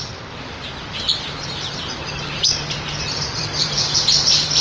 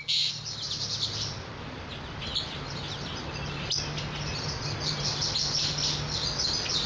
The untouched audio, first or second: second